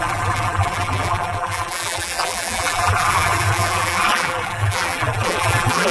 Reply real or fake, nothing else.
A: fake